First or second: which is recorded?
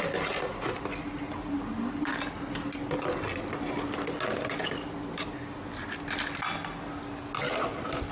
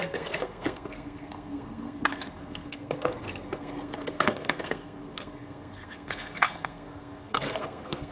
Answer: first